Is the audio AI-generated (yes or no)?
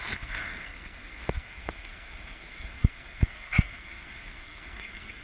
yes